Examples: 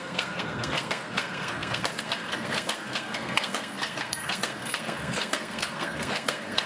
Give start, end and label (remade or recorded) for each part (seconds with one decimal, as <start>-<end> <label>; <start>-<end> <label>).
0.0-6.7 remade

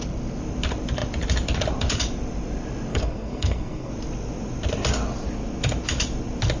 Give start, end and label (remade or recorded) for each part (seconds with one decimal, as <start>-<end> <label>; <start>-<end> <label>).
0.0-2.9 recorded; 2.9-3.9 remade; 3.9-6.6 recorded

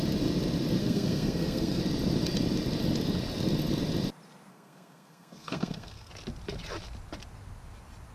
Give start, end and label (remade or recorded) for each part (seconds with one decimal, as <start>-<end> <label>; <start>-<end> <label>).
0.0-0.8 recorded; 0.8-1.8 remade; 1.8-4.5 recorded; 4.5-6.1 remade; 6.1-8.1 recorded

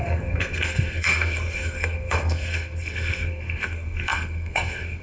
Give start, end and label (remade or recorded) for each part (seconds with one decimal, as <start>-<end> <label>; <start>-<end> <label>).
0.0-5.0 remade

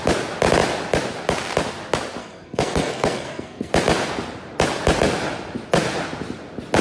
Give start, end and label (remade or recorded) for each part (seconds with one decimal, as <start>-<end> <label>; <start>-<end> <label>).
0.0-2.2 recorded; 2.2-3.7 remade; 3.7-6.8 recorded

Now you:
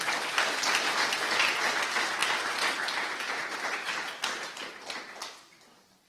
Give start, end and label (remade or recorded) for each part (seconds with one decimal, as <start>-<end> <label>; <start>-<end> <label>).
0.0-6.1 recorded

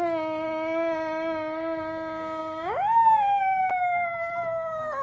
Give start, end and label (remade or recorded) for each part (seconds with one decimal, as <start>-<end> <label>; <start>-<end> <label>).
0.0-5.0 recorded